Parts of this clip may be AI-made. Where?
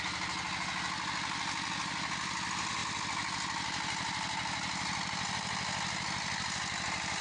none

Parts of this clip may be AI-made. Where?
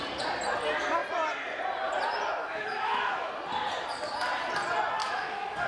2.4-3.3 (autoencoder, DAC-VAE); 5.0-5.7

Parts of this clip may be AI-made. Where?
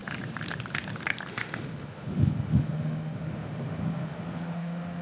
1.3-5.0 (autoencoder, DAC-VAE)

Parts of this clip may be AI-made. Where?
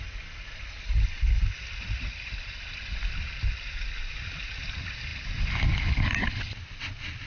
none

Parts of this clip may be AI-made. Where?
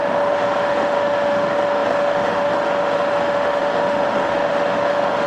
0.0-5.3 (autoencoder, DAC-VAE)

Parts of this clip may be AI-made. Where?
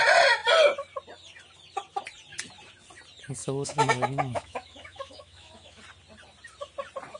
3.4-5.8 (autoencoder, DAC-VAE)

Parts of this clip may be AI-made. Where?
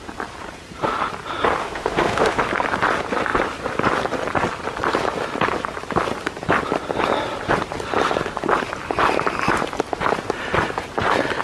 1.6-2.4 (autoencoder, DAC-VAE)